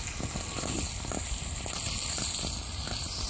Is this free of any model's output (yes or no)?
yes